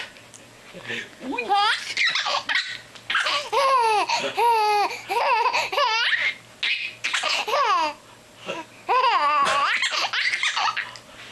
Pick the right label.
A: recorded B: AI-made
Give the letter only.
A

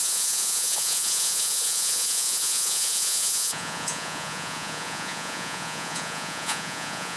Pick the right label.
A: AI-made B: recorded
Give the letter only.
A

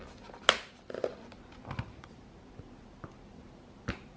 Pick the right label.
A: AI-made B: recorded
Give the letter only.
B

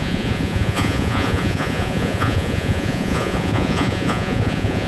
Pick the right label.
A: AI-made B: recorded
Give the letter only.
A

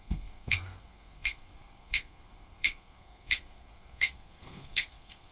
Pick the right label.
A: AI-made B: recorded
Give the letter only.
A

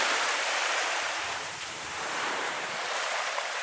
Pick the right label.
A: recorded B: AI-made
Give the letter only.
B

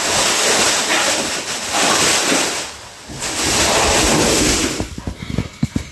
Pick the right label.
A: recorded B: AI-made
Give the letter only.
A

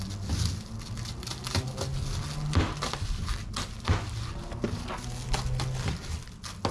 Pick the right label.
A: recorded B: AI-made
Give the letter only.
A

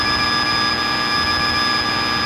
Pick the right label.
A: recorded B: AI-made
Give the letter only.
A